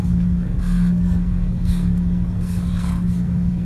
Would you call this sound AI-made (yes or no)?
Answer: yes